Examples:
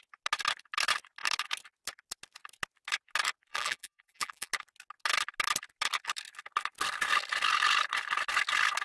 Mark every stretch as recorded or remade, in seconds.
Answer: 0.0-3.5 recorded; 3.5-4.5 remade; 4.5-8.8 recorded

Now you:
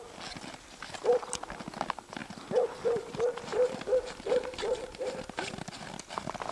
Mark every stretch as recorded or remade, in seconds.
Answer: 0.0-3.5 recorded; 3.5-5.6 remade; 5.6-6.5 recorded

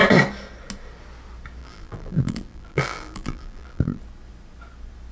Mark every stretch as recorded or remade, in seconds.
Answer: 0.0-1.6 recorded; 1.6-4.0 remade; 4.0-5.1 recorded

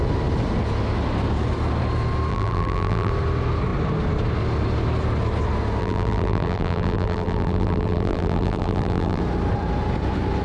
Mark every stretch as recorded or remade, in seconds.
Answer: 0.0-2.3 recorded; 2.3-3.1 remade; 3.1-5.8 recorded; 5.8-9.2 remade; 9.2-10.4 recorded

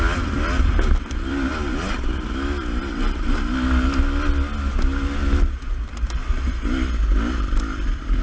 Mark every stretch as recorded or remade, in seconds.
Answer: 0.0-1.5 remade; 1.5-5.7 recorded; 5.7-6.2 remade; 6.2-7.4 recorded; 7.4-8.2 remade

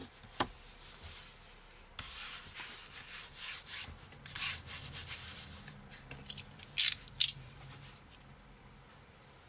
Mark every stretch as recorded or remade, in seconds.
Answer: 0.0-3.0 recorded; 3.0-9.5 remade

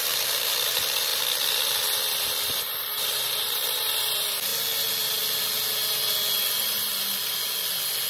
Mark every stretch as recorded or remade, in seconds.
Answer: 0.0-4.5 remade; 4.5-8.1 recorded